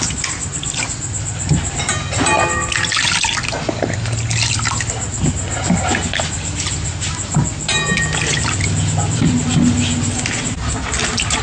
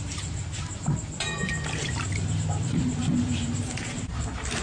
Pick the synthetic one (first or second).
second